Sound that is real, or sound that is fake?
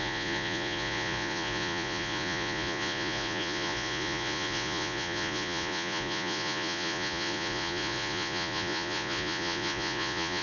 fake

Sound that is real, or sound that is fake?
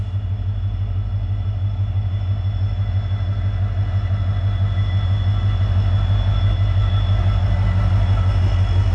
real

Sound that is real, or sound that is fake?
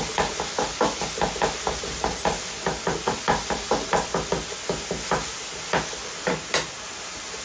real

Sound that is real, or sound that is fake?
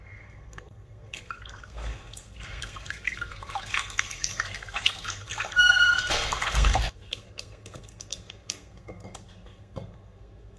fake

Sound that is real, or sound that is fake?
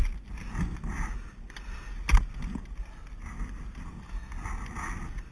real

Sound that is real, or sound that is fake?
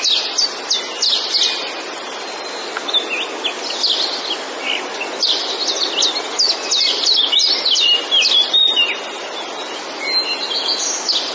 real